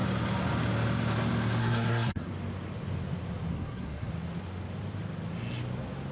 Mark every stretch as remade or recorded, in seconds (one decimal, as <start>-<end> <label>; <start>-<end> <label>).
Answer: 0.0-1.6 recorded; 1.6-2.3 remade; 2.3-3.5 recorded; 3.5-4.1 remade; 4.1-6.1 recorded